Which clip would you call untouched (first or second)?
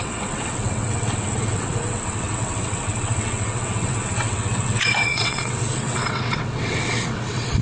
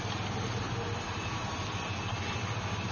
second